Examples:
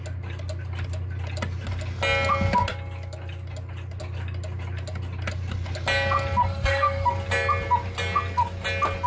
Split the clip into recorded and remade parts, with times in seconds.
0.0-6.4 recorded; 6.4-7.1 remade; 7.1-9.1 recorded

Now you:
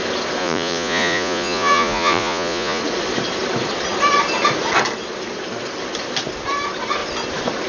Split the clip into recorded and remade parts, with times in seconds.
0.0-0.4 recorded; 0.4-2.8 remade; 2.8-7.7 recorded

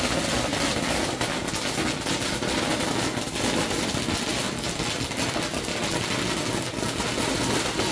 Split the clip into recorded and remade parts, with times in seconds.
0.0-7.9 recorded